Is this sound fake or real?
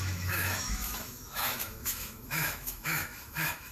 fake